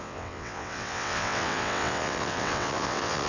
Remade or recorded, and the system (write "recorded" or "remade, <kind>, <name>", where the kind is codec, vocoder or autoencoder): remade, vocoder, WaveNeXt